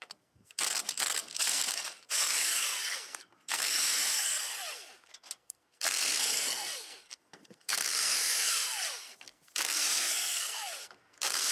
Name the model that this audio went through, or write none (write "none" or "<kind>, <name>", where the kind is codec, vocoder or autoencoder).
codec, SNAC